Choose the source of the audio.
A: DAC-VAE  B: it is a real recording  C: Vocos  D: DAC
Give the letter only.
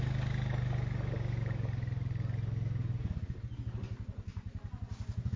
B